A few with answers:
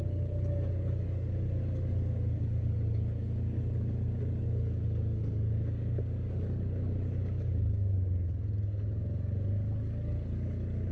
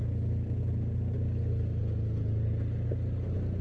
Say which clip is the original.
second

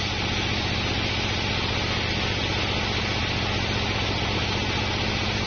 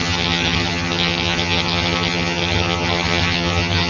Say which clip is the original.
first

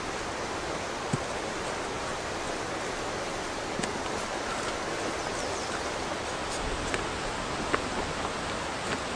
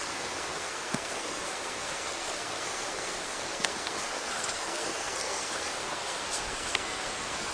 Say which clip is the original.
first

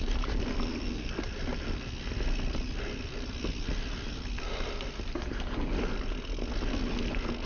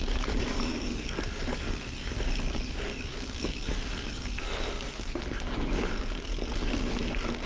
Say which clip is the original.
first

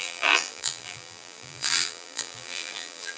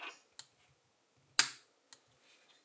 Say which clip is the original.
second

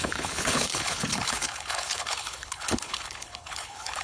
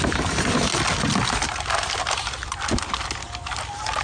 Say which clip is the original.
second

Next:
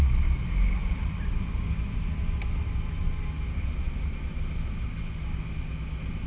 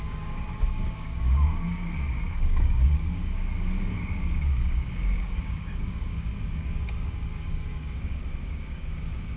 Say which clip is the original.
first